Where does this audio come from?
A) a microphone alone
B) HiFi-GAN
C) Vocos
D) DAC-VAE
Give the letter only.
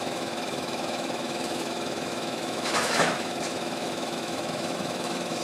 D